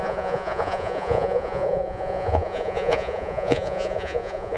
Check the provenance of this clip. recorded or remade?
remade